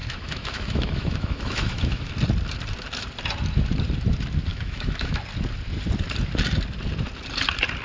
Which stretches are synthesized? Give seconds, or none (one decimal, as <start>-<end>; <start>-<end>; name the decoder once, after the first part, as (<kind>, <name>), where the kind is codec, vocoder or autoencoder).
0.0-2.1 (autoencoder, DAC-VAE); 4.5-5.2